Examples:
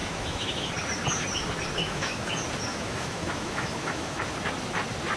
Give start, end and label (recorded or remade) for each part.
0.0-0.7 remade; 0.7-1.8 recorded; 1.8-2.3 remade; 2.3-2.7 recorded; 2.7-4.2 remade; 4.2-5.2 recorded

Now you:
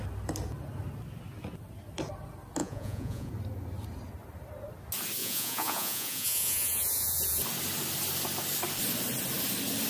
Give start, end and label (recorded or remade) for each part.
0.0-2.6 recorded; 2.6-3.3 remade; 3.3-5.2 recorded; 5.2-7.4 remade; 7.4-9.9 recorded